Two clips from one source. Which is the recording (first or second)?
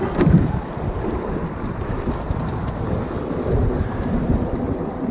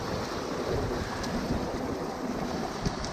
first